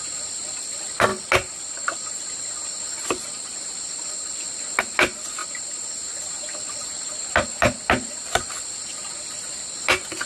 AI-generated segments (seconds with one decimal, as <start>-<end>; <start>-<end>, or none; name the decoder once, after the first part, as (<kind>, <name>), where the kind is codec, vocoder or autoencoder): none